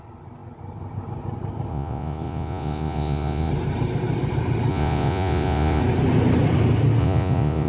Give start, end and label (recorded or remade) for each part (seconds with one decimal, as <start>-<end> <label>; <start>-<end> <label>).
0.0-1.7 recorded; 1.7-3.5 remade; 3.5-4.7 recorded; 4.7-5.8 remade; 5.8-7.0 recorded; 7.0-7.7 remade